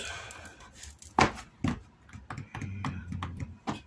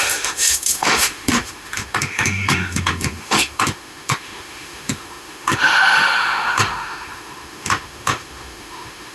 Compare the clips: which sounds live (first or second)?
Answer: first